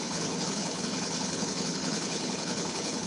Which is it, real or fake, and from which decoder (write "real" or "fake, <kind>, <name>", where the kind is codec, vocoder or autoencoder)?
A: fake, codec, HILCodec